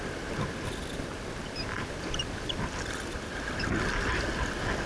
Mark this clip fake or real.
real